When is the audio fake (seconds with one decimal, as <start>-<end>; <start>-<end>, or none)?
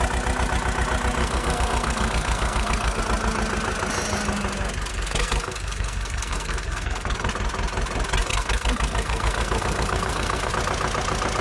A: 1.2-3.0; 4.9-7.3; 8.3-10.5